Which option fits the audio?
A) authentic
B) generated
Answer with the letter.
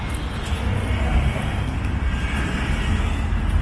A